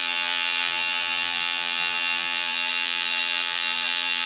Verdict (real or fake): fake